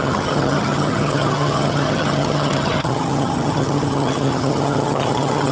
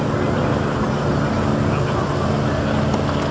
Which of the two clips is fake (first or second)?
first